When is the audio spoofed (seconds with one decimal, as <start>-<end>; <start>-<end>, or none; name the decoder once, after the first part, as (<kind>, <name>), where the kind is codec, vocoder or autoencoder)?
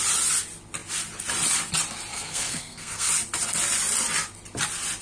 2.1-3.1 (codec, SNAC)